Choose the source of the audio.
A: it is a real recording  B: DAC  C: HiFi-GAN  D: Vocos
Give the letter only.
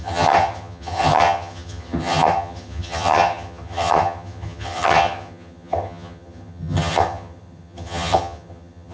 C